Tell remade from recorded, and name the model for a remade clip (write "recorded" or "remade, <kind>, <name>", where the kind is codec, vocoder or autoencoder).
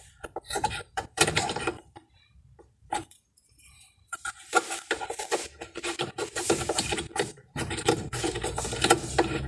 remade, vocoder, BigVGAN v2